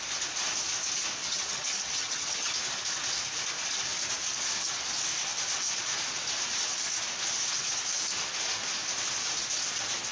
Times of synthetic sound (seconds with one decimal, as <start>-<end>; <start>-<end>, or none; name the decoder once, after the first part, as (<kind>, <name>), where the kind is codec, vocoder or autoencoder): 1.2-2.5 (vocoder, HiFi-GAN)